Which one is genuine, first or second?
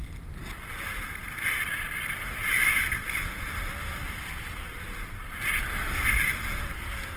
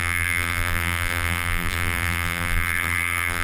first